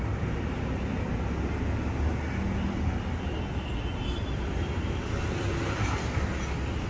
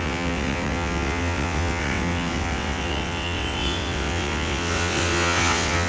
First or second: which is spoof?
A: second